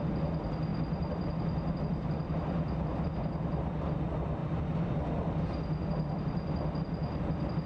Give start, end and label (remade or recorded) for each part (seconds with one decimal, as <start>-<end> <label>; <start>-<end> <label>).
0.0-7.7 recorded